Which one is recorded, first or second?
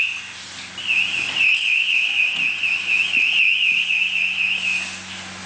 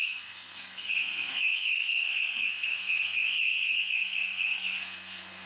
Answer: first